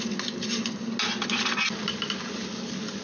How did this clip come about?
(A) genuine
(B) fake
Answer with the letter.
A